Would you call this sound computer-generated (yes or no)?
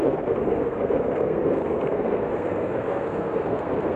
yes